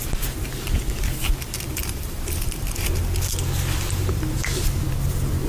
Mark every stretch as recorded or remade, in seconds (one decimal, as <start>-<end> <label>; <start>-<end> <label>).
0.0-1.8 recorded; 1.8-4.5 remade; 4.5-5.5 recorded